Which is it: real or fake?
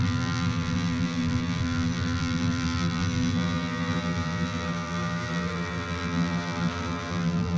fake